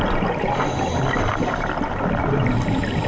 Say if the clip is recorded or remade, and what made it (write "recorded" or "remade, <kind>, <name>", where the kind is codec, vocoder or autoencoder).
recorded